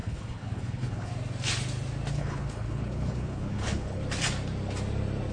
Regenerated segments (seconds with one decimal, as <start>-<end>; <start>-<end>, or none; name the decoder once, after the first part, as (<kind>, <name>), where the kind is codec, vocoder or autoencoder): 0.0-1.1 (codec, HILCodec); 2.1-4.0

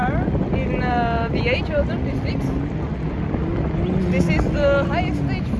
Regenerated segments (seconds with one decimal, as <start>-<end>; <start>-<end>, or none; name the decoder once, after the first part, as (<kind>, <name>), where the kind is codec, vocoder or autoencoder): none

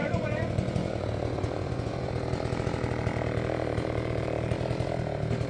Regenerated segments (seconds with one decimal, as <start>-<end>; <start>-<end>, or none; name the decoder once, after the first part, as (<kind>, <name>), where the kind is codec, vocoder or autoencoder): 0.0-2.1 (vocoder, Vocos)

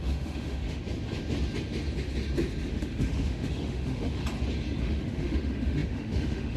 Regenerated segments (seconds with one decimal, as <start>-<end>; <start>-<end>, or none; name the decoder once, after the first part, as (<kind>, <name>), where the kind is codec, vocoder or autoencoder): 0.0-0.8 (autoencoder, DAC-VAE); 2.7-4.2; 4.8-6.6

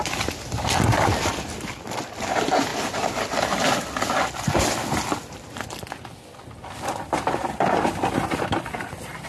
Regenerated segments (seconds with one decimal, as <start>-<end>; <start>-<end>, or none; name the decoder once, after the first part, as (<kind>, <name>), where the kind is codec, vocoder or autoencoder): none

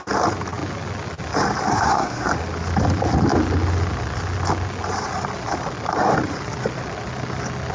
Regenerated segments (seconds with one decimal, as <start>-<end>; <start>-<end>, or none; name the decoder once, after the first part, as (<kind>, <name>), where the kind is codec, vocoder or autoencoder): 1.7-2.3 (codec, SNAC)